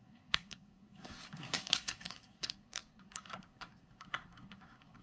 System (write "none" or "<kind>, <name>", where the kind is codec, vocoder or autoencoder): codec, SNAC